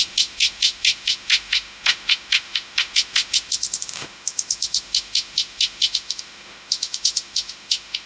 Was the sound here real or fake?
fake